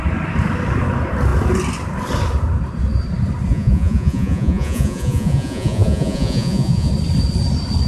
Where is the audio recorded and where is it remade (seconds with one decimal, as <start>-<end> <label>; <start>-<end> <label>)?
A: 0.0-3.5 recorded; 3.5-6.9 remade; 6.9-7.9 recorded